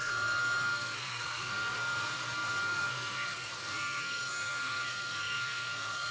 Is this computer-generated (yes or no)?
yes